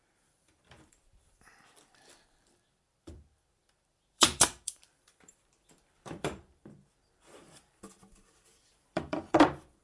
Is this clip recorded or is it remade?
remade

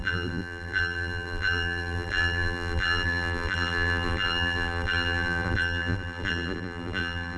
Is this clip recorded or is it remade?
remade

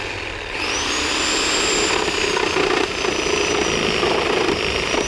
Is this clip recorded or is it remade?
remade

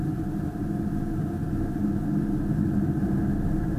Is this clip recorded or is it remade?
recorded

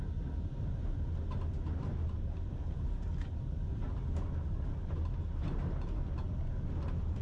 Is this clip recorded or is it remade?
recorded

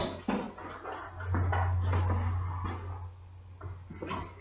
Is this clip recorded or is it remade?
recorded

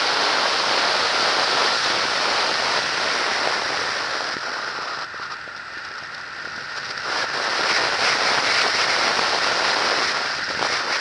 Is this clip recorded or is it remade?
recorded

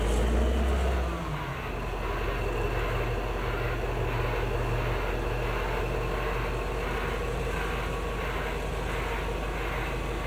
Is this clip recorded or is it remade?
recorded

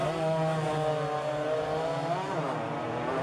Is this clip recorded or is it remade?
recorded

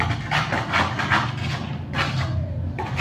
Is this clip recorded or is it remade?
recorded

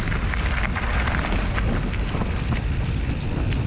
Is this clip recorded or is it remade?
remade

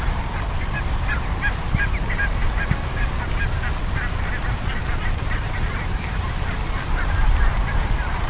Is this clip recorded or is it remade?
remade